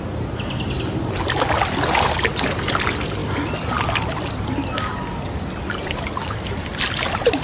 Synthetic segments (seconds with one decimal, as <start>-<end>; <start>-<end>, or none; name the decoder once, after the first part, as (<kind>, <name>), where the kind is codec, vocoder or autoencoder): none